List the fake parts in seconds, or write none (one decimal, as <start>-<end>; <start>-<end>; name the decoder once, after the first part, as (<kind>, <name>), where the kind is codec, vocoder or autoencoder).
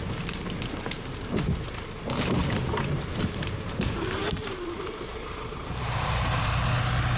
2.4-6.7 (vocoder, BigVGAN v2)